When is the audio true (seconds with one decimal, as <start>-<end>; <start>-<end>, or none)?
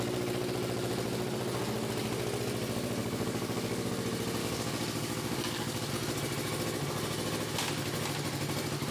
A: 0.0-3.0; 3.9-4.4; 5.9-8.9